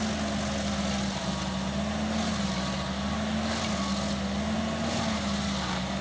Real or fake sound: real